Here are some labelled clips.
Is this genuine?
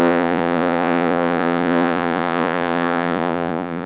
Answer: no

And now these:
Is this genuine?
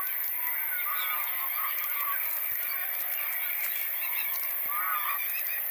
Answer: yes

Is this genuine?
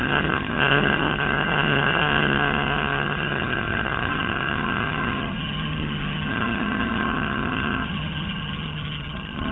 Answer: no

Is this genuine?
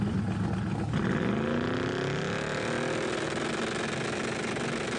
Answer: yes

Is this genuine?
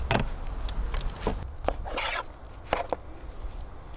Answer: yes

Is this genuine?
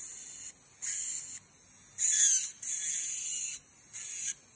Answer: yes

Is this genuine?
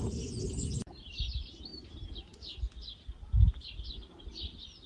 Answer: yes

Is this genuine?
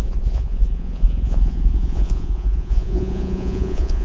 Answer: no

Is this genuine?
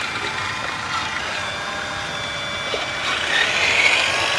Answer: yes